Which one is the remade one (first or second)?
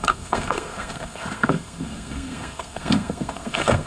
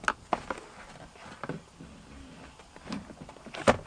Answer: first